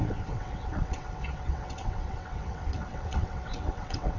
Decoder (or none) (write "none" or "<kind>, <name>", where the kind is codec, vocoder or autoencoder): vocoder, WaveNeXt